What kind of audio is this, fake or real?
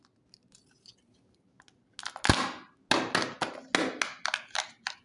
real